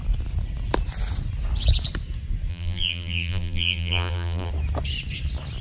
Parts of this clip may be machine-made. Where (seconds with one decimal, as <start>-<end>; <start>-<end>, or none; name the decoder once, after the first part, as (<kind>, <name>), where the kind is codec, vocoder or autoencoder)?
2.5-4.5 (vocoder, BigVGAN v2)